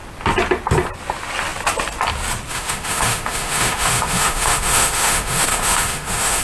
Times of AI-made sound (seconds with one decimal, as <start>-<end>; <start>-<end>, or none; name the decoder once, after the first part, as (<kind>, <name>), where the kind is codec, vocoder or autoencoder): 2.5-6.4 (autoencoder, DAC-VAE)